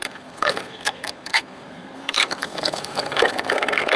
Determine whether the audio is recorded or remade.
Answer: remade